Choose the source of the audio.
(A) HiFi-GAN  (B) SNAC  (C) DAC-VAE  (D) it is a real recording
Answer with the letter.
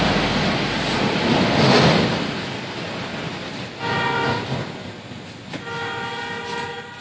D